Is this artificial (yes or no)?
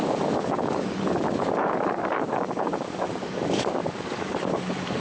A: yes